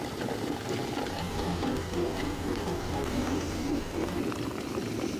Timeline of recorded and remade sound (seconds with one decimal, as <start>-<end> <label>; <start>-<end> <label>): 0.0-1.1 recorded; 1.1-4.2 remade; 4.2-5.2 recorded